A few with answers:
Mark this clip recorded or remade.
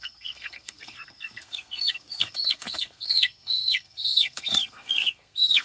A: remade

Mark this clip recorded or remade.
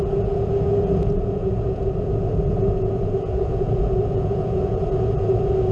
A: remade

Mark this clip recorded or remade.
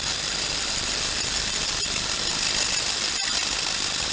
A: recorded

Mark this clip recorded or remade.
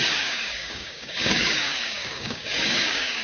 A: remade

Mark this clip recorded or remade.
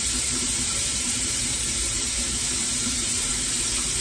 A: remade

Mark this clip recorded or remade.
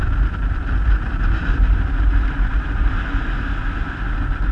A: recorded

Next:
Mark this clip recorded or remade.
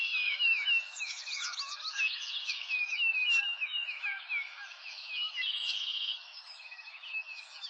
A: remade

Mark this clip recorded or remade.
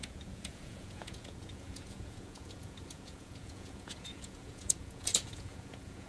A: remade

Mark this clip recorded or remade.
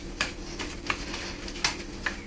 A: recorded